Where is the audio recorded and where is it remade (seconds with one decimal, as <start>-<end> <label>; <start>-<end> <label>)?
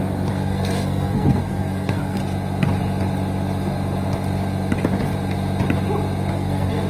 0.0-2.2 remade; 2.2-6.3 recorded; 6.3-6.9 remade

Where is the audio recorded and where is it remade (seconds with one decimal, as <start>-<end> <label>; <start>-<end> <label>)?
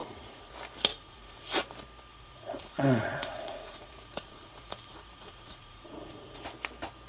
0.0-0.5 remade; 0.5-0.9 recorded; 0.9-1.6 remade; 1.6-2.1 recorded; 2.1-6.4 remade; 6.4-7.1 recorded